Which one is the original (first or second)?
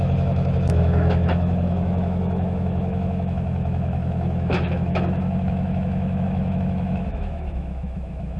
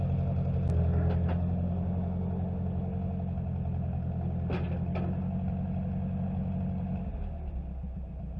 second